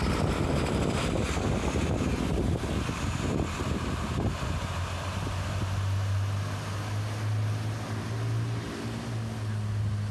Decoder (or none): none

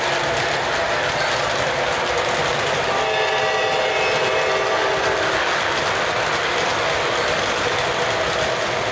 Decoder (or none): none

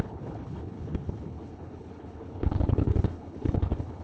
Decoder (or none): codec, HILCodec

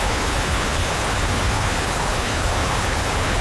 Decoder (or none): codec, HILCodec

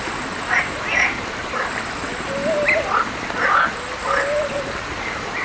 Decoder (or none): none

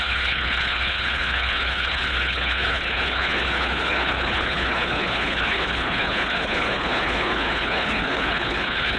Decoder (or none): codec, HILCodec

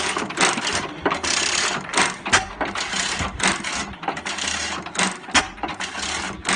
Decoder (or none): none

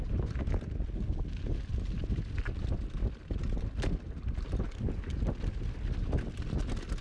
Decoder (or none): none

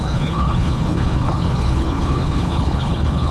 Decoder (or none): codec, HILCodec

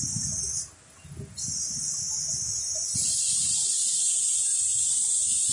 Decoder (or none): none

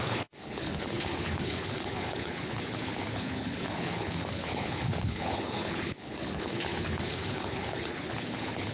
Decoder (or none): codec, HILCodec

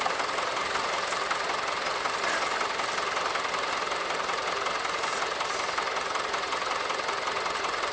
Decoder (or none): none